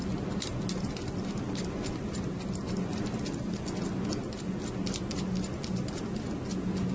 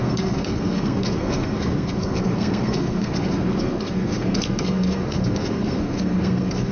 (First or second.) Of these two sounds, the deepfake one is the second